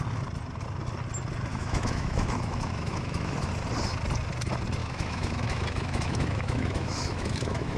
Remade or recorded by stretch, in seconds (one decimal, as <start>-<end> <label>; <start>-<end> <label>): 0.0-1.5 recorded; 1.5-3.5 remade; 3.5-4.8 recorded; 4.8-7.8 remade